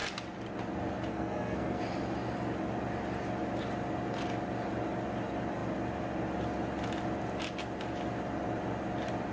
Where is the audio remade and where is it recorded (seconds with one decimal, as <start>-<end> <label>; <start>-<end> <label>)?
0.0-1.1 recorded; 1.1-1.8 remade; 1.8-9.3 recorded